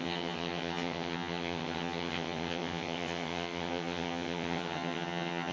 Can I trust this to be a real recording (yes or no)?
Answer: no